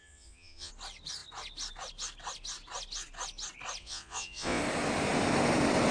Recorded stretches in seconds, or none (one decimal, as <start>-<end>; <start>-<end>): 0.7-3.8; 4.6-5.9